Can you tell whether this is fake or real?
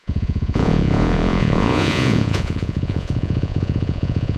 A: fake